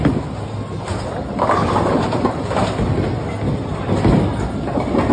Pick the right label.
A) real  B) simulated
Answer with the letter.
A